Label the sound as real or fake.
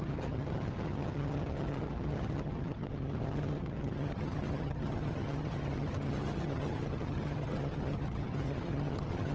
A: fake